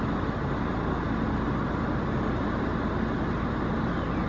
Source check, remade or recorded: recorded